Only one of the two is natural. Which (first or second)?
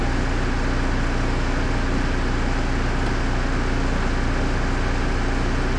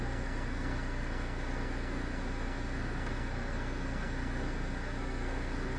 first